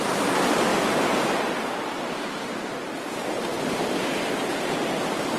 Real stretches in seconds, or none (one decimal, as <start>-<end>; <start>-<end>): 0.0-5.4